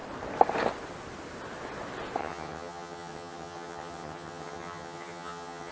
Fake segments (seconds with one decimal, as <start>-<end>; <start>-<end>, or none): 2.2-5.7